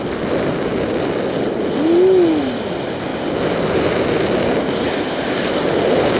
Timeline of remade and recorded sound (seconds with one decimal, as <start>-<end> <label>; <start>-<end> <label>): 0.0-6.2 recorded